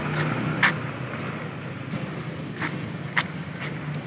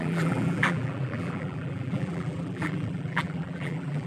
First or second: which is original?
first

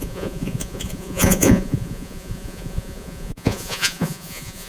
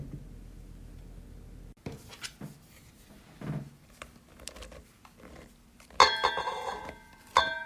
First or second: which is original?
second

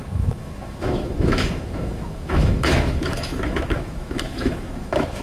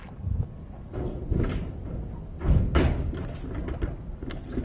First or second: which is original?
second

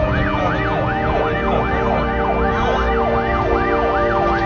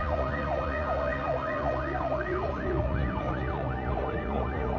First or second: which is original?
first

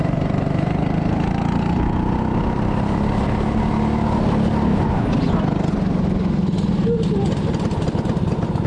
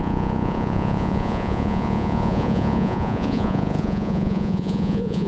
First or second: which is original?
first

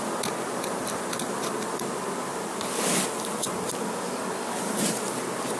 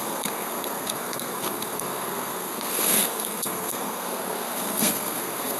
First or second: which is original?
first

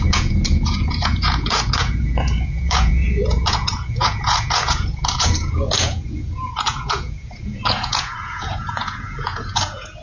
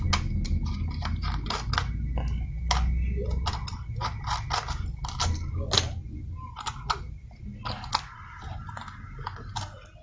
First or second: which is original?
second